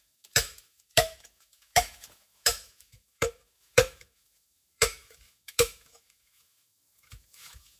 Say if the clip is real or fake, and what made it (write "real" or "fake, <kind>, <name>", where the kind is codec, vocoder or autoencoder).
fake, autoencoder, DAC-VAE